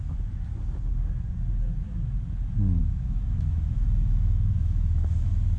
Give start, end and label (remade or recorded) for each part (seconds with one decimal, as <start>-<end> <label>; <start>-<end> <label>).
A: 0.0-2.8 recorded; 2.8-5.6 remade